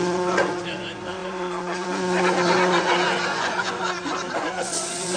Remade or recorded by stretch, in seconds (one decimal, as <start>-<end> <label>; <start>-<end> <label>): 0.0-5.2 remade